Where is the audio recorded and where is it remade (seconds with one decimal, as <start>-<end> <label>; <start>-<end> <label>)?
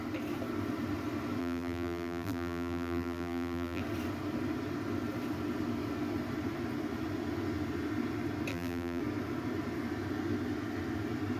0.0-1.4 recorded; 1.4-3.8 remade; 3.8-8.5 recorded; 8.5-9.0 remade; 9.0-11.4 recorded